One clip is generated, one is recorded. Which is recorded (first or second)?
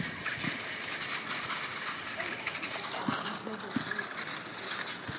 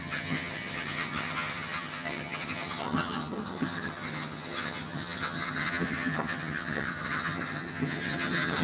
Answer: first